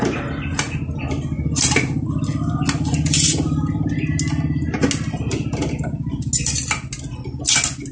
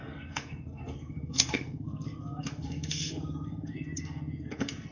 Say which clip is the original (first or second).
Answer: first